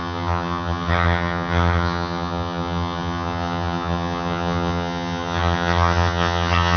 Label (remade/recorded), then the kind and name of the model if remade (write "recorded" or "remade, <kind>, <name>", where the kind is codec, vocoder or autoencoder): remade, vocoder, HiFi-GAN